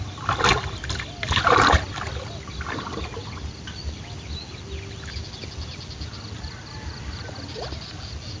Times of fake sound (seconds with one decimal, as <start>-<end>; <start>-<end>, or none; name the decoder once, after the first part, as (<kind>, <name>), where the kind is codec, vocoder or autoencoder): none